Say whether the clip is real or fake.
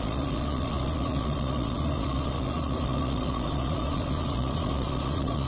fake